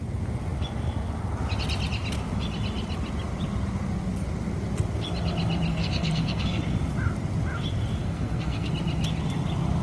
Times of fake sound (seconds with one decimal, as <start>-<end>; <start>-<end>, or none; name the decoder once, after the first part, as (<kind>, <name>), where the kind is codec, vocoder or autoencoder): 5.7-6.6 (codec, SNAC); 8.0-8.7

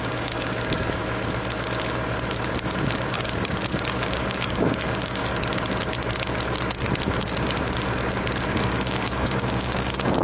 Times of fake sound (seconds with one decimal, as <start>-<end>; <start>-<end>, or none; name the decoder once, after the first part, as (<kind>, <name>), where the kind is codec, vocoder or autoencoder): 0.0-1.0 (codec, DAC); 3.1-5.2; 8.5-10.2